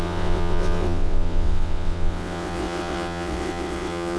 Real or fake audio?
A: fake